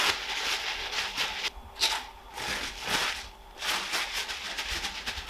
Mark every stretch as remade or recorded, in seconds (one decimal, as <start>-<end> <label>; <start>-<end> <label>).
0.0-5.3 recorded